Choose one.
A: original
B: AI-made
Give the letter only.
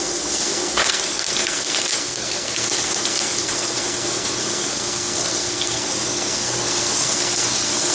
B